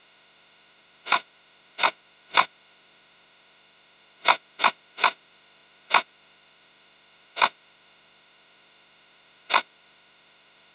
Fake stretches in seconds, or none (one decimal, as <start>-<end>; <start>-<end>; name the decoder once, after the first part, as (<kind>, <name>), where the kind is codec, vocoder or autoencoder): 0.0-10.7 (autoencoder, DAC-VAE)